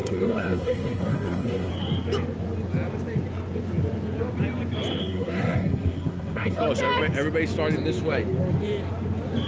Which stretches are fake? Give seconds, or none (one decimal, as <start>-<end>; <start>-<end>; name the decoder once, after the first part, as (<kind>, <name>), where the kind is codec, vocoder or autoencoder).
0.0-1.7 (codec, SNAC); 5.0-6.6